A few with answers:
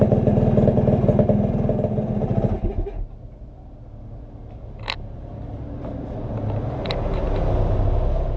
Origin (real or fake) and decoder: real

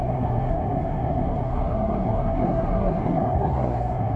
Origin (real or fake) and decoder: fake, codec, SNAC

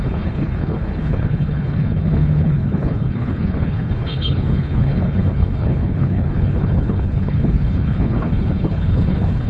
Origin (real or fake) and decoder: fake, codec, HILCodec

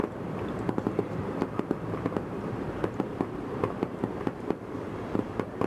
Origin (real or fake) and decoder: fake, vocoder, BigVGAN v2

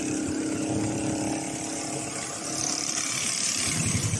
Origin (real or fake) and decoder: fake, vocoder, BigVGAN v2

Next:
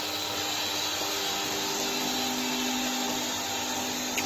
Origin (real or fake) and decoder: real